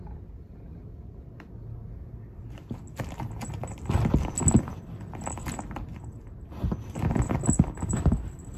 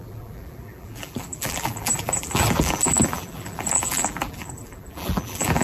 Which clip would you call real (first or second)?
first